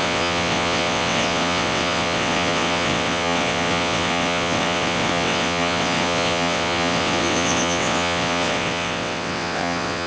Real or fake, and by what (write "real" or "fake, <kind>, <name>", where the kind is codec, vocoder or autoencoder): fake, vocoder, WaveNeXt